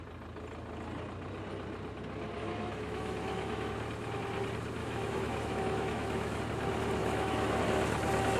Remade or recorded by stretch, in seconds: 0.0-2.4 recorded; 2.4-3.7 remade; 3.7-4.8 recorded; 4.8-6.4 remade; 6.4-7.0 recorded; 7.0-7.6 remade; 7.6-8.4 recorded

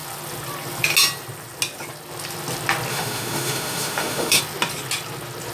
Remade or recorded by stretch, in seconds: 0.0-2.9 recorded; 2.9-4.4 remade; 4.4-5.5 recorded

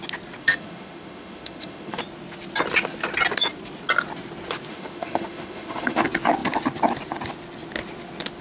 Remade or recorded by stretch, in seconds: 0.0-0.4 recorded; 0.4-2.0 remade; 2.0-4.7 recorded; 4.7-6.0 remade; 6.0-8.4 recorded

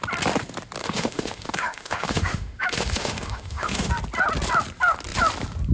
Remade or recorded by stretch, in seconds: 0.0-0.8 recorded; 0.8-3.9 remade; 3.9-5.7 recorded